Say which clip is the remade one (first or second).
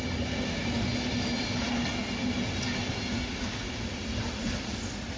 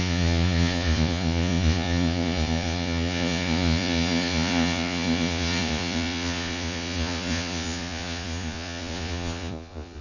second